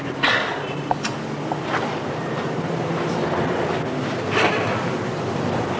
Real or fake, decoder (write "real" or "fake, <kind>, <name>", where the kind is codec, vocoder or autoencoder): real